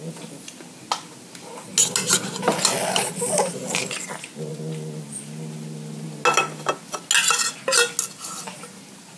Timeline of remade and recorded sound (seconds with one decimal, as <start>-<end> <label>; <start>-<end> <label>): 0.0-9.2 recorded